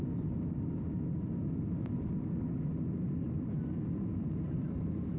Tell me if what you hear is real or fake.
real